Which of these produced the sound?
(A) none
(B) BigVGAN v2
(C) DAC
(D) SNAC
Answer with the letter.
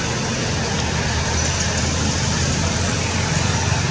A